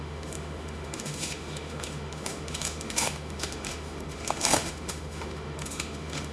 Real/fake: fake